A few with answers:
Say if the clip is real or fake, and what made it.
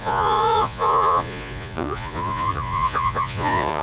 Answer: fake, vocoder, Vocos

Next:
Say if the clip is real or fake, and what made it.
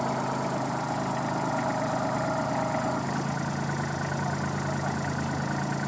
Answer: real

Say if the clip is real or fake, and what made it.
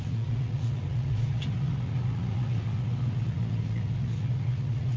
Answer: fake, vocoder, Vocos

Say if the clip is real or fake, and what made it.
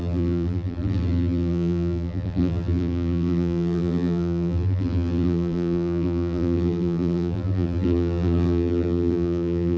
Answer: fake, vocoder, BigVGAN v2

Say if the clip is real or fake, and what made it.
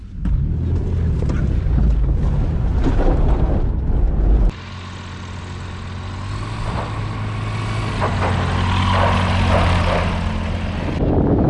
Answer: real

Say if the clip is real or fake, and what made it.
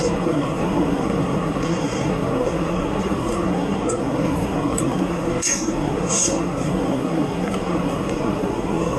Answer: fake, codec, SNAC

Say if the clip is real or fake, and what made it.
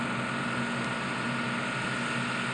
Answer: real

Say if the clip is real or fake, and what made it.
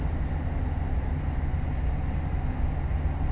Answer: real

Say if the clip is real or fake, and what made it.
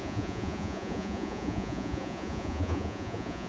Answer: fake, vocoder, Vocos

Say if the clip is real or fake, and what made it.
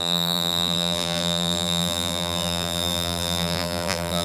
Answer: fake, vocoder, BigVGAN v2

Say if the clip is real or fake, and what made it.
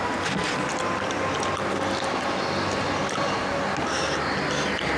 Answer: real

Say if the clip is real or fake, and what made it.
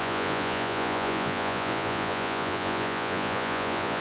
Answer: fake, vocoder, Vocos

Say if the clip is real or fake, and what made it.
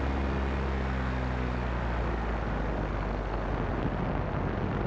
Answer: real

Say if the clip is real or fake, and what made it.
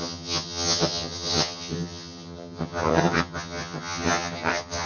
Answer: fake, vocoder, HiFi-GAN